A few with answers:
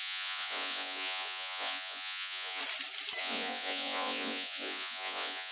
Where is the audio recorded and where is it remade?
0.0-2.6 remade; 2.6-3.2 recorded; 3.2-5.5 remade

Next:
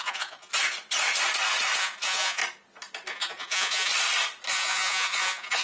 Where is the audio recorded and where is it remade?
0.0-0.5 remade; 0.5-1.8 recorded; 1.8-2.4 remade; 2.4-3.1 recorded; 3.1-3.9 remade; 3.9-4.5 recorded; 4.5-5.6 remade

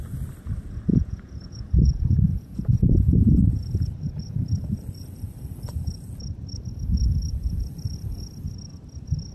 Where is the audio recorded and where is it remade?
0.0-0.9 recorded; 0.9-3.6 remade; 3.6-9.3 recorded

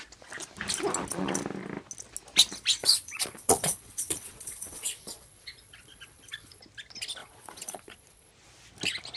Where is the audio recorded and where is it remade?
0.0-2.8 recorded; 2.8-6.6 remade; 6.6-7.2 recorded; 7.2-8.3 remade; 8.3-9.2 recorded

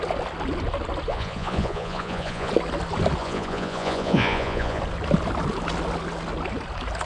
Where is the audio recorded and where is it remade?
0.0-1.1 recorded; 1.1-2.5 remade; 2.5-3.2 recorded; 3.2-4.8 remade; 4.8-7.1 recorded

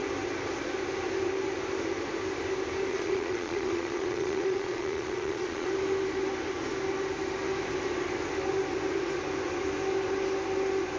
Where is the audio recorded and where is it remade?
0.0-2.9 recorded; 2.9-5.7 remade; 5.7-11.0 recorded

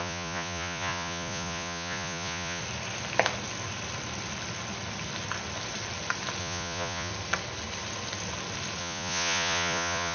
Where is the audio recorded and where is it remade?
0.0-2.6 remade; 2.6-6.4 recorded; 6.4-7.1 remade; 7.1-8.8 recorded; 8.8-10.1 remade